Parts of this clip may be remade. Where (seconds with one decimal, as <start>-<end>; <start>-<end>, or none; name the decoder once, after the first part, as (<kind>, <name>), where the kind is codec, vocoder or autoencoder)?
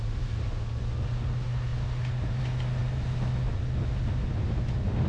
none